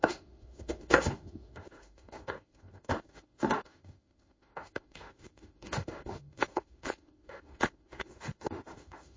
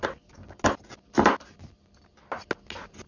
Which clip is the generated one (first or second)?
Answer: first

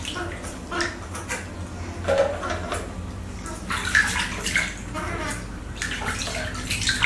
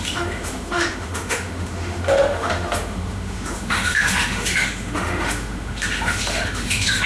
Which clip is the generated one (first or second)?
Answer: second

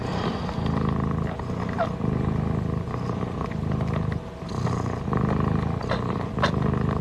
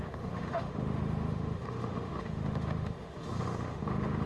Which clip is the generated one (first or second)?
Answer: second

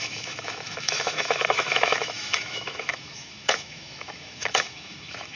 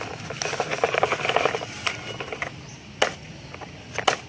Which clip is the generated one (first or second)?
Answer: first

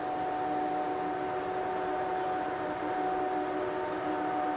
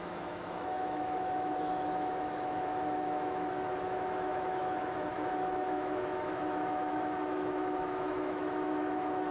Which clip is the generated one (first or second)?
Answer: second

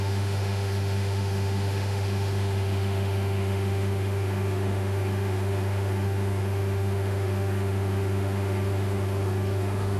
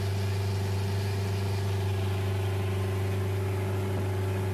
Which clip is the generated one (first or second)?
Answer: first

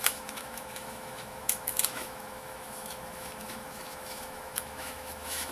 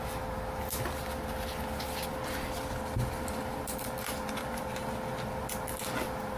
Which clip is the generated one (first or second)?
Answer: first